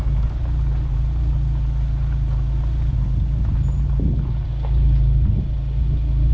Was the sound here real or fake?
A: real